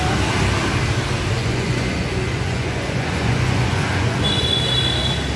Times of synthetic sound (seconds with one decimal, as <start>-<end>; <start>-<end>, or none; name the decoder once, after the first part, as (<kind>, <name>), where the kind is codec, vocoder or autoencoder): 1.4-4.6 (vocoder, Vocos)